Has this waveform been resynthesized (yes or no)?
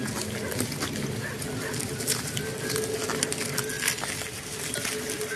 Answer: no